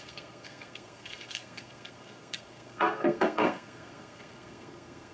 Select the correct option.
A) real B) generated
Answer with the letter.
B